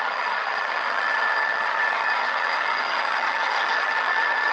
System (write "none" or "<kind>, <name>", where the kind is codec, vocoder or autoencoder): vocoder, HiFi-GAN